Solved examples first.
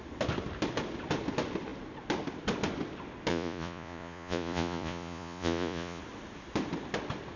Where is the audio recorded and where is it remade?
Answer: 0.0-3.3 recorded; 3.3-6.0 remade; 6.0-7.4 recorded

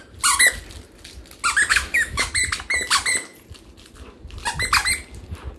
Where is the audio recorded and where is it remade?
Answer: 0.0-1.7 recorded; 1.7-2.3 remade; 2.3-5.6 recorded